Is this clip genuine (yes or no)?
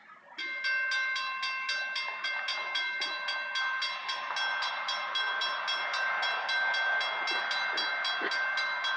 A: yes